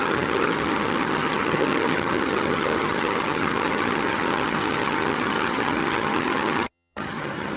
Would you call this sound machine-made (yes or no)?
yes